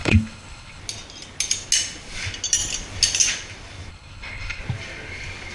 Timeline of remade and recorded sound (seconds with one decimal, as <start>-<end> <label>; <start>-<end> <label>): 0.0-0.8 remade; 0.8-3.9 recorded; 3.9-4.6 remade; 4.6-5.5 recorded